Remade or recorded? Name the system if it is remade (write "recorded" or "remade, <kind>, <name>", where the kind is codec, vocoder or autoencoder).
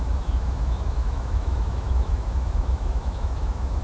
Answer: remade, autoencoder, DAC-VAE